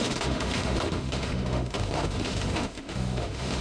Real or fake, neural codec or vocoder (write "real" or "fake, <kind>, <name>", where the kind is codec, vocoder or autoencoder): fake, autoencoder, DAC-VAE